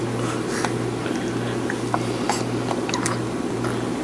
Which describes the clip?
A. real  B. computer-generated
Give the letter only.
A